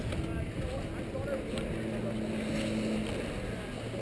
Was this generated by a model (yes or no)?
no